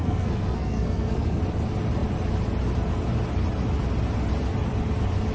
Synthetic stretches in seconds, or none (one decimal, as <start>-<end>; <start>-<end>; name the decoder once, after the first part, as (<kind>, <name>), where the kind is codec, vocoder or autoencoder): 0.0-1.4 (codec, SNAC)

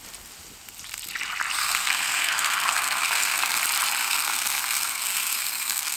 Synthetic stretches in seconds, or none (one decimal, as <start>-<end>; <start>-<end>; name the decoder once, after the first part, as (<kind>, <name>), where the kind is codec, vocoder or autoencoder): 1.6-3.6 (codec, SNAC); 4.0-6.0

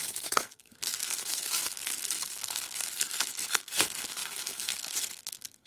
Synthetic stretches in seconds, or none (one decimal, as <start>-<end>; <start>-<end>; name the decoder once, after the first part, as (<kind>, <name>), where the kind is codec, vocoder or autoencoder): 0.0-5.7 (codec, SNAC)

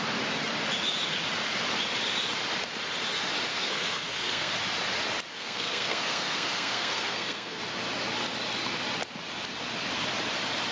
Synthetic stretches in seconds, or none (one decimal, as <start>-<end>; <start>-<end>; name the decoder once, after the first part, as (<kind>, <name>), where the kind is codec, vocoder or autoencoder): 3.5-4.5 (codec, SNAC); 5.3-7.6

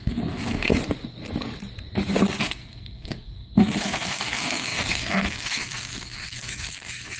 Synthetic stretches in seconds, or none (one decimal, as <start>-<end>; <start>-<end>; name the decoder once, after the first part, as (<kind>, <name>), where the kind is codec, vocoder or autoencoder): 0.0-0.7 (codec, SNAC); 2.4-7.2